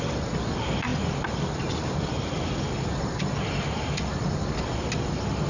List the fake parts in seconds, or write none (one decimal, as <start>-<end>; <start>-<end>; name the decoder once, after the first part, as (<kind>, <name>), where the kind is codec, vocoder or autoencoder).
none